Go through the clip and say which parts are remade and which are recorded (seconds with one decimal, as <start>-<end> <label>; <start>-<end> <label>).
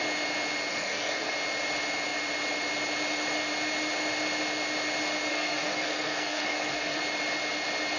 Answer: 0.0-0.7 recorded; 0.7-1.3 remade; 1.3-5.3 recorded; 5.3-7.0 remade; 7.0-8.0 recorded